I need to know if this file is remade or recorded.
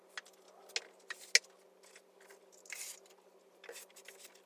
recorded